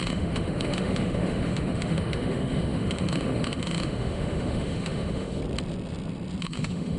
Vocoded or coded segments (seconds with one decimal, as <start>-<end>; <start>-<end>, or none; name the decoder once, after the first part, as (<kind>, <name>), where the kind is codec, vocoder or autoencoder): 0.0-5.4 (autoencoder, DAC-VAE); 6.4-7.0